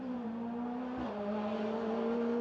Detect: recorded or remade recorded